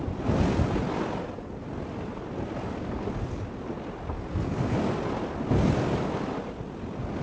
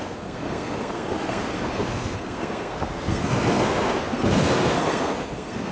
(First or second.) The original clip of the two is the first